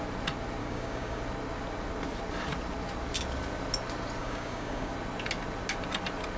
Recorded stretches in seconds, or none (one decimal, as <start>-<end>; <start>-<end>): 0.0-0.6; 1.2-4.2; 4.9-6.4